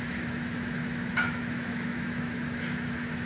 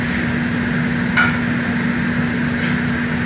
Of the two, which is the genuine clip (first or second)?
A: second